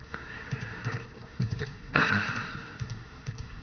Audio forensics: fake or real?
fake